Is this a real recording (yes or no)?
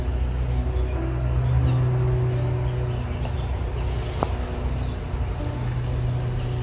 yes